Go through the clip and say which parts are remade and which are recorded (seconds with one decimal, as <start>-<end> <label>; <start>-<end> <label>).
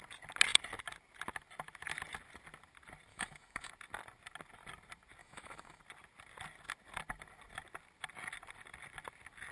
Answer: 0.0-3.1 recorded; 3.1-3.7 remade; 3.7-5.2 recorded; 5.2-5.8 remade; 5.8-9.5 recorded